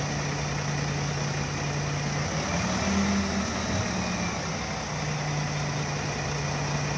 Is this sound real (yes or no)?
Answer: yes